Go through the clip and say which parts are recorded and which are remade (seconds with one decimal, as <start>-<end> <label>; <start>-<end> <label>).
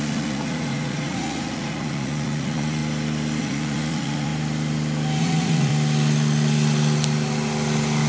0.0-2.8 remade; 2.8-3.4 recorded; 3.4-4.3 remade; 4.3-5.2 recorded; 5.2-5.7 remade; 5.7-8.1 recorded